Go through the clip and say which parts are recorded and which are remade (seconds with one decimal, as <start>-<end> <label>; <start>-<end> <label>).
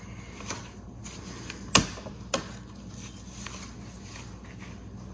0.0-5.1 recorded